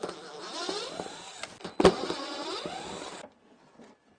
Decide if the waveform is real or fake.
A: real